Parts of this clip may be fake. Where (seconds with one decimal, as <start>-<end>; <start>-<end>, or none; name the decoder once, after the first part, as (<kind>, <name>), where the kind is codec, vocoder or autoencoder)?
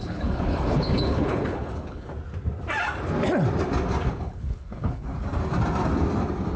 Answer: 0.0-2.1 (codec, HILCodec); 4.1-5.1